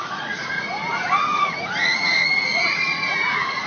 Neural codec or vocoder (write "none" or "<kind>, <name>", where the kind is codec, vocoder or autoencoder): vocoder, Vocos